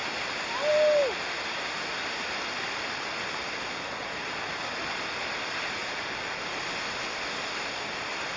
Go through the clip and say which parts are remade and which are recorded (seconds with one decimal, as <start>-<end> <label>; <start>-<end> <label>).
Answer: 0.0-5.8 recorded; 5.8-6.4 remade; 6.4-8.4 recorded